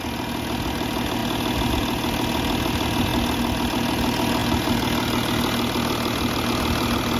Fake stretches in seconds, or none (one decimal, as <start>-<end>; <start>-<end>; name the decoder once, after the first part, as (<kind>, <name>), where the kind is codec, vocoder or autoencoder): none